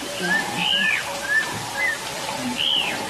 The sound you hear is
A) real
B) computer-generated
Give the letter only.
A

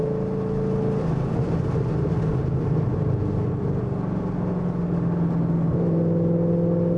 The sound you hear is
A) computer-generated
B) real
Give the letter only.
B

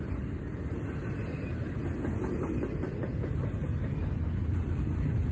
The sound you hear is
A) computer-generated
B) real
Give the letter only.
B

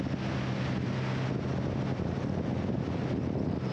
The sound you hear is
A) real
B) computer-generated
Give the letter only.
A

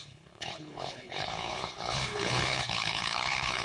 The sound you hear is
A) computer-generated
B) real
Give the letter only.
A